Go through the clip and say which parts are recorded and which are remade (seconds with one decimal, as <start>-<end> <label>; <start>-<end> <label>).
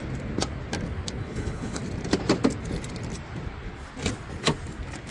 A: 0.0-1.2 recorded; 1.2-1.8 remade; 1.8-5.1 recorded